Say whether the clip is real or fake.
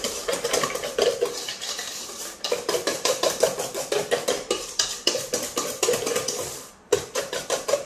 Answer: fake